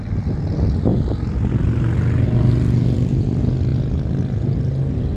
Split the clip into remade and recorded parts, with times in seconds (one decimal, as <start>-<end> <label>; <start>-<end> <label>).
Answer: 0.0-3.7 recorded; 3.7-4.8 remade; 4.8-5.2 recorded